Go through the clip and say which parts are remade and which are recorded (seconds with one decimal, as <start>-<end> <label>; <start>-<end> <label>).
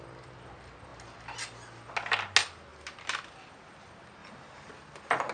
0.0-4.2 recorded; 4.2-4.7 remade; 4.7-5.3 recorded